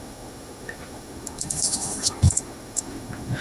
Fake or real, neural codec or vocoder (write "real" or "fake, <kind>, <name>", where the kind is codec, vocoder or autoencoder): fake, autoencoder, DAC-VAE